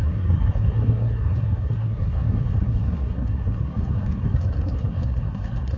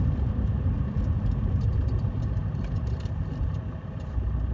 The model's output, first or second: first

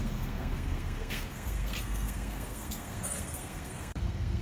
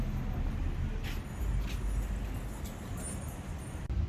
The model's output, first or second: first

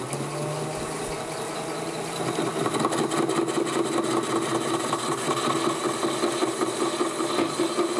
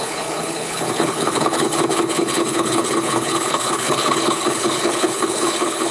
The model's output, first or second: second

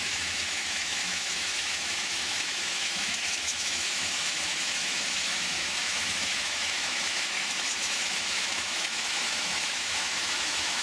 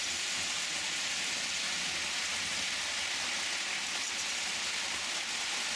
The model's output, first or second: first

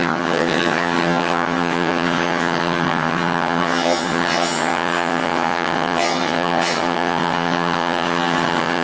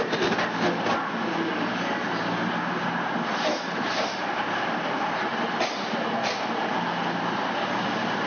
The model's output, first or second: first